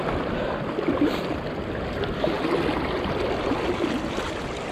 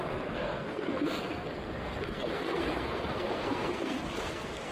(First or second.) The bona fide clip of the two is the first